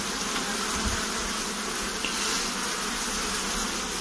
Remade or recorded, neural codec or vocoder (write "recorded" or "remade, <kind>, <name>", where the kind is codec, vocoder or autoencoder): recorded